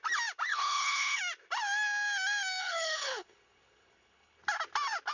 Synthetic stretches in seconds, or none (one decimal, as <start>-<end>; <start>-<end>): 0.5-1.2; 2.6-4.4